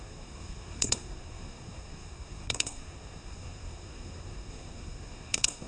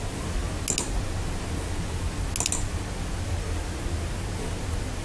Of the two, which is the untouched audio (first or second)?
second